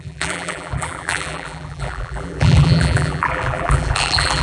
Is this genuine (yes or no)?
no